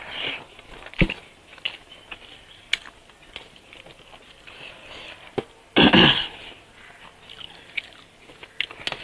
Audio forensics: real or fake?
real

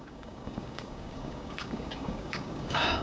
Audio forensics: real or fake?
fake